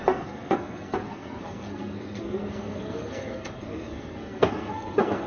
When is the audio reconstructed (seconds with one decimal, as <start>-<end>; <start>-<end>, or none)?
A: 0.0-5.3